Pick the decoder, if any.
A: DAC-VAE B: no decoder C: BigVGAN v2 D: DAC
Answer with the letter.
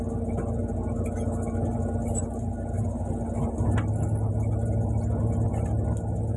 B